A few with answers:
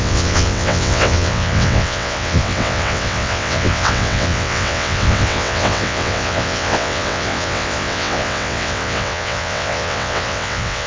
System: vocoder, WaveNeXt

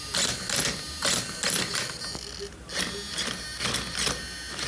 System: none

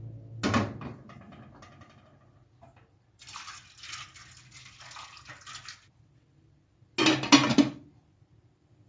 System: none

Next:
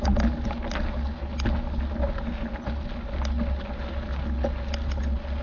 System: none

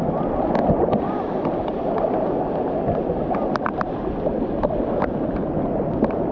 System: none